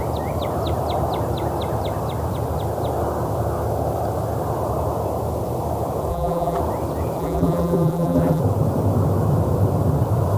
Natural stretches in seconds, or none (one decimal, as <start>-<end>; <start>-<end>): 0.0-6.1; 6.6-7.2; 8.4-10.4